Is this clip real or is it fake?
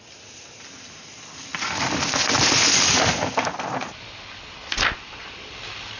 real